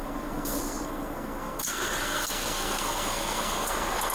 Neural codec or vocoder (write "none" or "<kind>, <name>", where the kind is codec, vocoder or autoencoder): codec, SNAC